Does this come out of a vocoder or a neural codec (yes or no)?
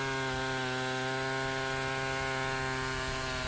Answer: no